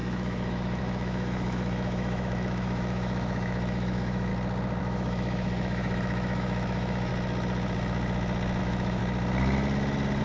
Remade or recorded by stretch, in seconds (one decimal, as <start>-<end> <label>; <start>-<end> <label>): 0.0-4.3 remade; 4.3-4.8 recorded; 4.8-7.1 remade; 7.1-8.6 recorded; 8.6-9.0 remade; 9.0-10.2 recorded